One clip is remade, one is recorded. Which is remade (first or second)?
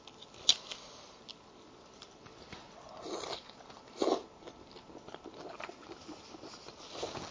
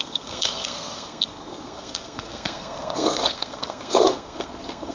second